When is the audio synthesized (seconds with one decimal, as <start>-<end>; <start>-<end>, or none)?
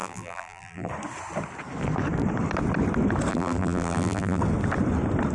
0.0-0.9; 3.3-4.4